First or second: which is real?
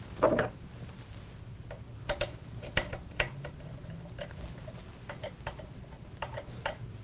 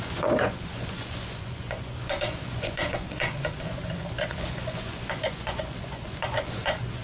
first